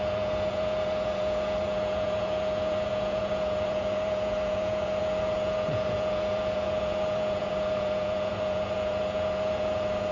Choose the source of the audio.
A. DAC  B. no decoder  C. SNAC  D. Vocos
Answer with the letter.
D